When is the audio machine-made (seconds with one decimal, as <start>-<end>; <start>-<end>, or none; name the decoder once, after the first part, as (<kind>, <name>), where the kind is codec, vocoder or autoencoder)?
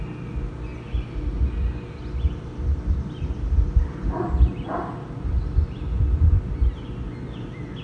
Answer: none